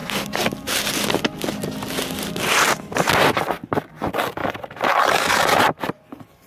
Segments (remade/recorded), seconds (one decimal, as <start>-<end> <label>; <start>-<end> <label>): 0.0-4.4 recorded; 4.4-6.5 remade